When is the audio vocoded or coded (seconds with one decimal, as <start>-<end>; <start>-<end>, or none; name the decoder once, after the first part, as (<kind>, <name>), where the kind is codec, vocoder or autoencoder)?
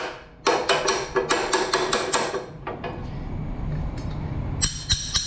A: none